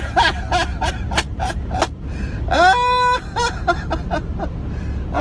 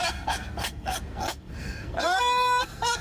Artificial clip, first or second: second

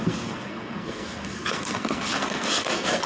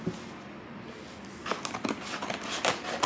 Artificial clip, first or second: first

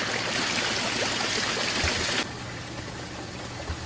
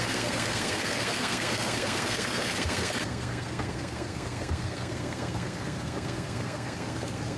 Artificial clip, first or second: second